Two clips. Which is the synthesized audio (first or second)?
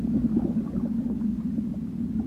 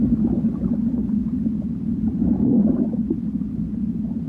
second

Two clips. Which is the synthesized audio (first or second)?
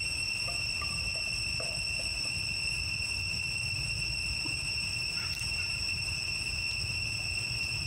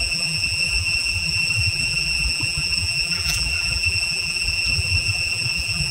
second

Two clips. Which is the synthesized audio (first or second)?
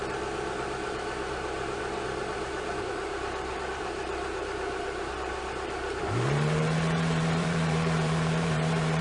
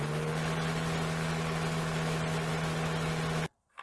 first